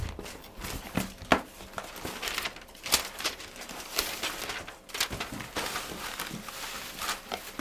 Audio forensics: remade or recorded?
recorded